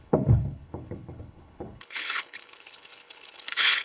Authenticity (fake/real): fake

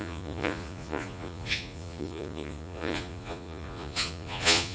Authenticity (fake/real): fake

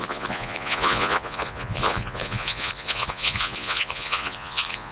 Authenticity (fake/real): fake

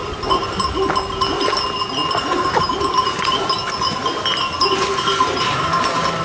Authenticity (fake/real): real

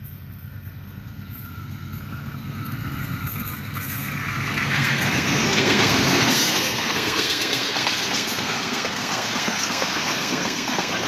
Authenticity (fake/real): fake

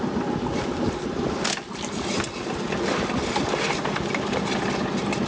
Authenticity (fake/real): real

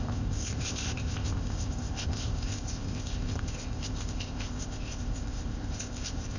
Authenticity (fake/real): fake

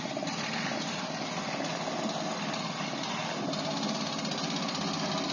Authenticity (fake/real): real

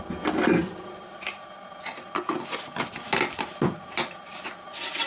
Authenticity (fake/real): real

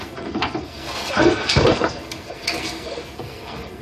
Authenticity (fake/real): fake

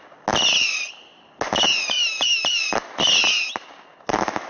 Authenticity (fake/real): real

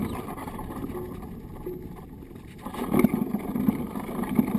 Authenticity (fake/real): real